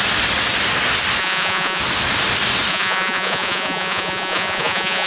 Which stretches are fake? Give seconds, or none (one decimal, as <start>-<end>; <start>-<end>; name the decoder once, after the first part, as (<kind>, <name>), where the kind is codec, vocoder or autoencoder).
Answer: 1.2-1.8 (vocoder, Vocos); 2.7-5.1